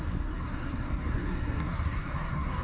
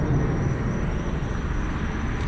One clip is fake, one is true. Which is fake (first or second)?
first